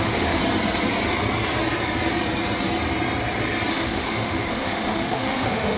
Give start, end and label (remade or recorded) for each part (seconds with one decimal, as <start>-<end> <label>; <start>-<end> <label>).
0.0-0.4 remade; 0.4-3.7 recorded; 3.7-5.8 remade